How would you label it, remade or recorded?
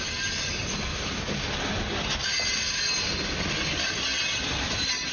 recorded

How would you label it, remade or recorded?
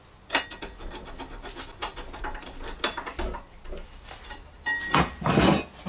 recorded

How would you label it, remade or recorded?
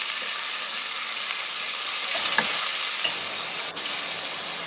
recorded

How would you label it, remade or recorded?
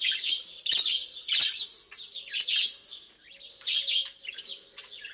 recorded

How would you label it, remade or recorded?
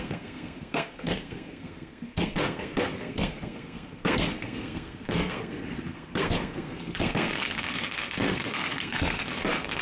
remade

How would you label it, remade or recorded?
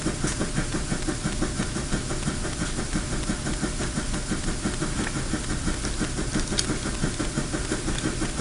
recorded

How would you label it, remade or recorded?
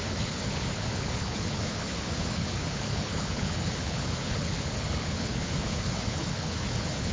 remade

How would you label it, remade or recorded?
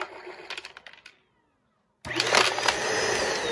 recorded